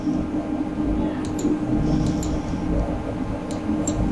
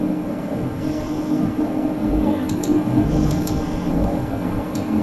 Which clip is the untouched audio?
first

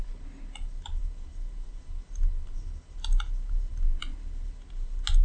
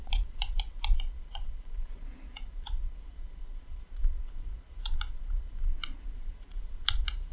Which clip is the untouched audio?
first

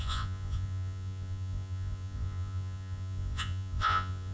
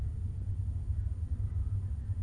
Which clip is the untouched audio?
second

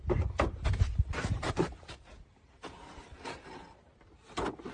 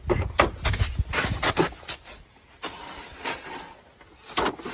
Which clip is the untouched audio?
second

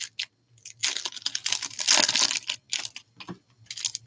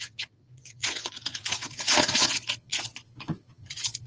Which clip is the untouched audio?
first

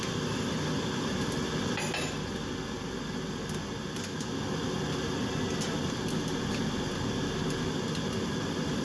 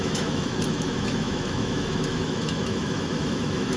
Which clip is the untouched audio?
first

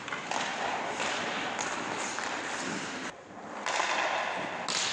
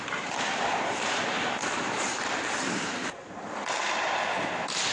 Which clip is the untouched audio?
first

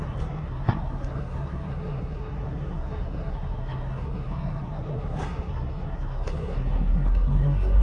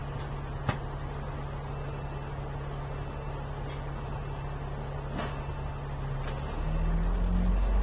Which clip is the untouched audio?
second